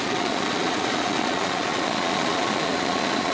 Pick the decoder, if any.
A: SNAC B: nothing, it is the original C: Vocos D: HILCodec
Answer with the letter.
C